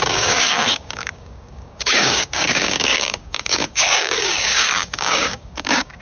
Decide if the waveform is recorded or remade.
remade